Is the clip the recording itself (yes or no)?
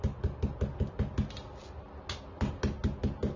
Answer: yes